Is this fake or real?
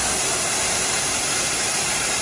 fake